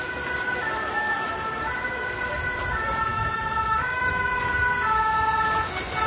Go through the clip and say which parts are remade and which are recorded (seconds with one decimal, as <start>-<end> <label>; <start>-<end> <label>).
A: 0.0-3.1 recorded; 3.1-4.4 remade; 4.4-6.1 recorded